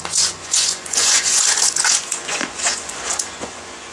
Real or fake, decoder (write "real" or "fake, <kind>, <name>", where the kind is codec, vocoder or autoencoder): fake, vocoder, Vocos